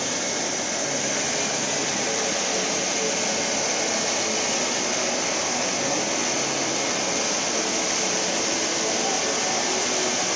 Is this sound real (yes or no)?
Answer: no